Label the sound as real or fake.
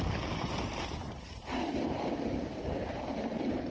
real